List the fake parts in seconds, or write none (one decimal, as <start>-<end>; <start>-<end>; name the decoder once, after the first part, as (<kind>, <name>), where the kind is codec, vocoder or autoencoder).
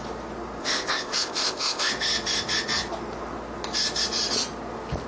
0.6-1.9 (codec, ZipCodec)